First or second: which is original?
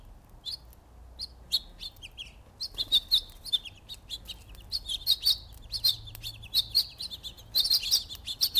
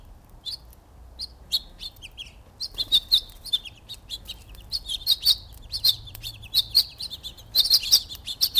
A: first